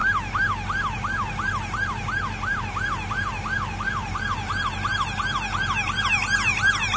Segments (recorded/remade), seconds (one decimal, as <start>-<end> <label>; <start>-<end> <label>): 0.0-7.0 recorded